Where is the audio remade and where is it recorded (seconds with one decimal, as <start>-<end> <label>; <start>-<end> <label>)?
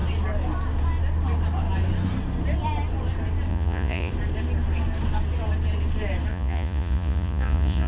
0.0-3.5 recorded; 3.5-4.1 remade; 4.1-6.3 recorded; 6.3-7.9 remade